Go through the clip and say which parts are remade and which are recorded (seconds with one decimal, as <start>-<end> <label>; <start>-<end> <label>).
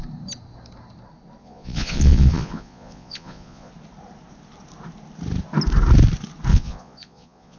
0.0-1.4 recorded; 1.4-3.7 remade; 3.7-6.5 recorded; 6.5-7.6 remade